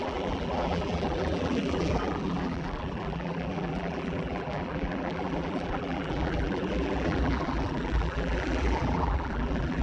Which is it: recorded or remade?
remade